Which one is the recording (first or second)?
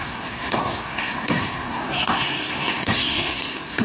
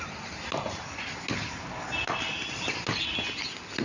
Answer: second